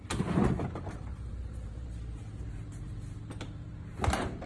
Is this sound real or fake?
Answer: fake